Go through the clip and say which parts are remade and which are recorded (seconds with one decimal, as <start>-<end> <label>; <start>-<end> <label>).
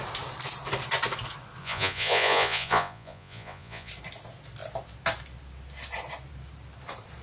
0.0-1.6 recorded; 1.6-3.9 remade; 3.9-7.2 recorded